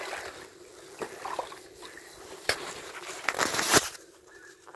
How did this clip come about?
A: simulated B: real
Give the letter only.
B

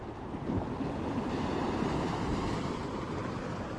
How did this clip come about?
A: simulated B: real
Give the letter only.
A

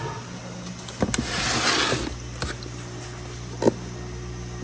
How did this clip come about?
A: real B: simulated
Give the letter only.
A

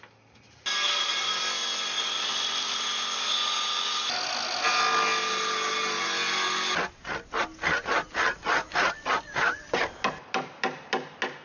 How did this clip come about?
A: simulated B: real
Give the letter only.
B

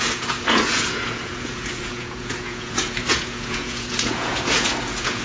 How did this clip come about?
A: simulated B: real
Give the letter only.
A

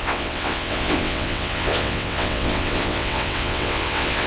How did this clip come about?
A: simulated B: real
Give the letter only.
A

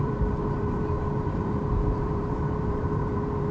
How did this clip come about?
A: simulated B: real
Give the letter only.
A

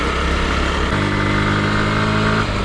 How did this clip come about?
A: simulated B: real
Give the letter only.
B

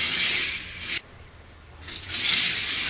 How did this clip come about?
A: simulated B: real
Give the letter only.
B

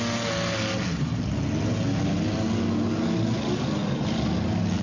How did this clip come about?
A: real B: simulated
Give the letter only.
A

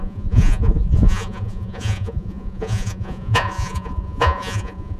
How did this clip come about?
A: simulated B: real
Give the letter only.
A